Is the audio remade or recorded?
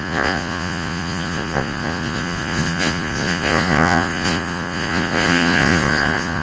remade